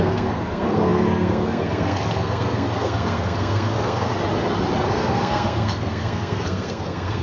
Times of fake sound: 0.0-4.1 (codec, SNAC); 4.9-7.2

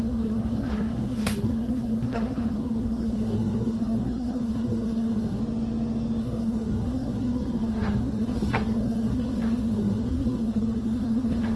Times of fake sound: 0.0-5.4 (codec, SNAC); 6.2-11.6

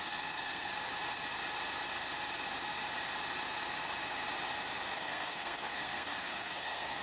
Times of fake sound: 0.0-0.7 (codec, SNAC); 4.9-7.0

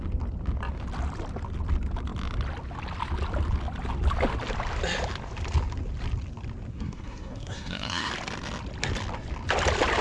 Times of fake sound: 6.7-8.1 (codec, SNAC)

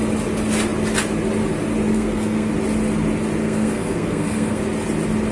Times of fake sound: 1.9-2.5 (codec, SNAC); 3.4-4.6

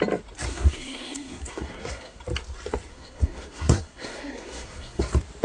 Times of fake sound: 0.5-2.2 (codec, SNAC); 2.9-5.0